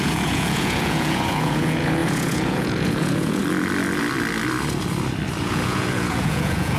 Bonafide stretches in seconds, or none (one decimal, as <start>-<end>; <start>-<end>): 3.4-5.4